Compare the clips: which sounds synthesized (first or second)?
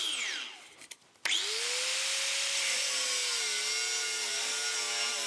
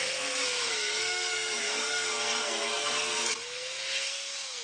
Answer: second